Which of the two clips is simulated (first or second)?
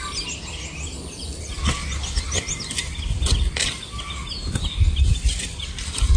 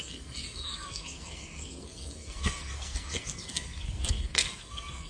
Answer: second